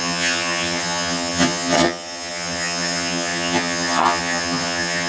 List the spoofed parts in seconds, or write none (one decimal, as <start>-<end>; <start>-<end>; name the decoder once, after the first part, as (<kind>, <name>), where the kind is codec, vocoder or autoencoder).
0.0-5.1 (vocoder, HiFi-GAN)